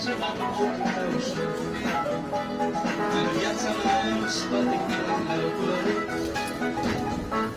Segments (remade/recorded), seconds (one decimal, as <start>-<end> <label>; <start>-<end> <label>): 0.0-4.8 recorded; 4.8-5.3 remade; 5.3-7.6 recorded